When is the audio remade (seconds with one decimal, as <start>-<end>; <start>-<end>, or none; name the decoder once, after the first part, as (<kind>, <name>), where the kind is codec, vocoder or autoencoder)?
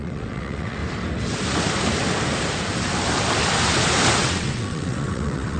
0.0-0.8 (vocoder, WaveNeXt); 4.2-5.6